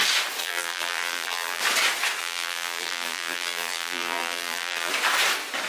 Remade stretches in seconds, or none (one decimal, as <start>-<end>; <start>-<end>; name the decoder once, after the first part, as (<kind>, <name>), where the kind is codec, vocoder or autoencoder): 0.4-1.6 (vocoder, BigVGAN v2); 2.2-4.9